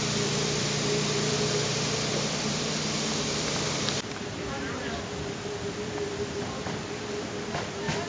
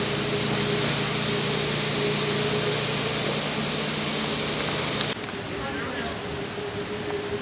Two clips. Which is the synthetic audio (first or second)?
first